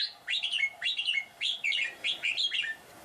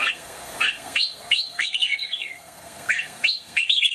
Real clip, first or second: first